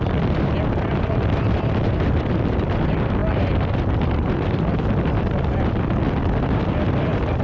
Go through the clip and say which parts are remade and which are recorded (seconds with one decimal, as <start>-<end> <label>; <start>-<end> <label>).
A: 0.0-7.4 remade